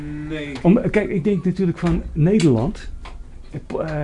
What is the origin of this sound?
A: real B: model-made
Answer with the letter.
A